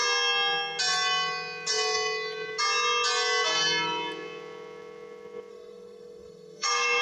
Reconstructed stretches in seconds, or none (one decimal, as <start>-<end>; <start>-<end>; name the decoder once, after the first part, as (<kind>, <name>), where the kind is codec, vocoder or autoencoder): 5.5-7.0 (codec, SNAC)